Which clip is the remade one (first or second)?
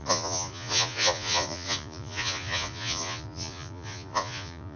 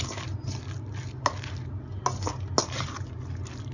first